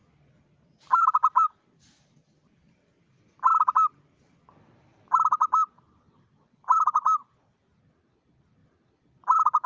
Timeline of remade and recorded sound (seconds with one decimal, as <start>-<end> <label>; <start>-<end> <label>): 0.0-3.7 remade; 3.7-9.7 recorded